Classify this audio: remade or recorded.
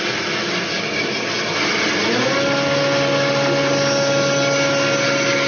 recorded